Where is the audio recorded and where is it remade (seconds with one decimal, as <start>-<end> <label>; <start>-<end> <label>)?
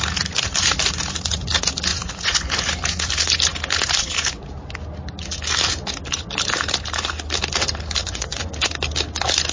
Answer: 0.0-1.9 recorded; 1.9-2.5 remade; 2.5-8.0 recorded; 8.0-8.5 remade; 8.5-9.5 recorded